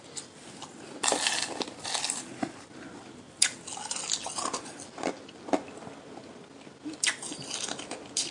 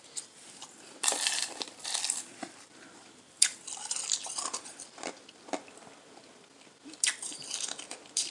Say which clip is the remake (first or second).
second